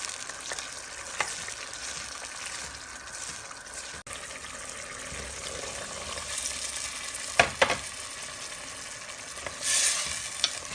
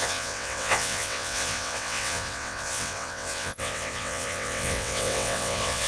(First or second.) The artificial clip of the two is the second